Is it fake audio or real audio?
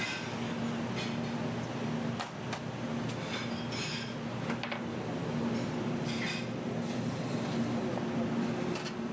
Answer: real